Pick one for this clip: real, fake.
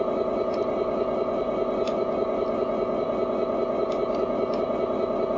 real